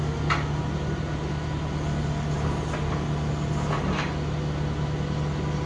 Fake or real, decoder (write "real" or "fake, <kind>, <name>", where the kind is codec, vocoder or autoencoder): real